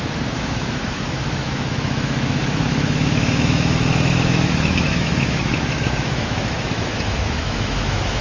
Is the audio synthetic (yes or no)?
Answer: yes